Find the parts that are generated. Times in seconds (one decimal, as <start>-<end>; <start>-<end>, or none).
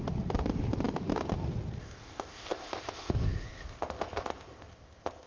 1.8-5.3